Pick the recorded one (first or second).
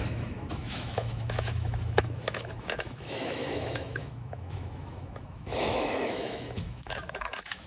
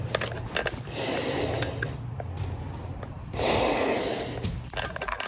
second